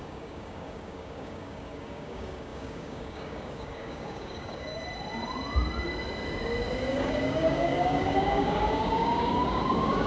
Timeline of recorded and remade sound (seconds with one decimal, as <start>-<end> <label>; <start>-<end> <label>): 0.0-4.7 remade; 4.7-6.9 recorded; 6.9-10.1 remade